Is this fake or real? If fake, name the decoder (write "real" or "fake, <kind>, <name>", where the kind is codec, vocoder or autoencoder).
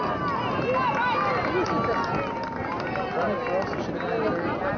real